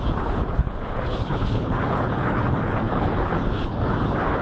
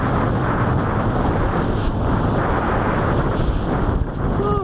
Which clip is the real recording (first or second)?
second